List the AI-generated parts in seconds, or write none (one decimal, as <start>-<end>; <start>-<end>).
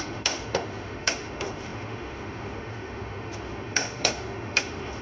0.0-5.0